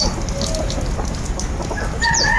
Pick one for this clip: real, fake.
real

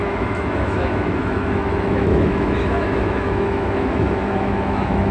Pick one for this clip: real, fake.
fake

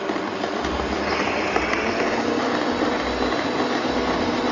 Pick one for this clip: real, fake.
real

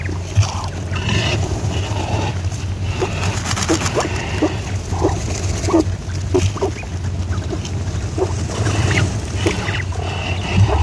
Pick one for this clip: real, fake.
real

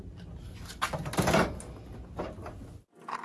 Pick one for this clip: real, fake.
real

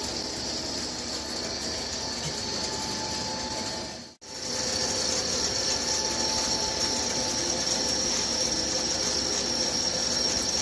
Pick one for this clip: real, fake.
real